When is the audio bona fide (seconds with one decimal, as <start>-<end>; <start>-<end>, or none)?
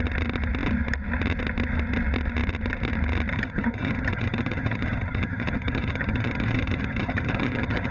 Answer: 0.0-3.3